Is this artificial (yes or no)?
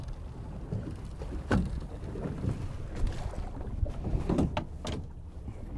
no